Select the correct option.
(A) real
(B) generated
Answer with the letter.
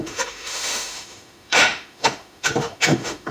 B